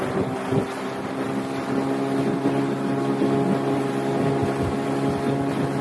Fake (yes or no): no